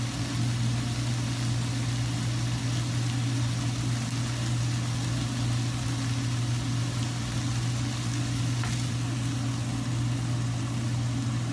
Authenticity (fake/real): real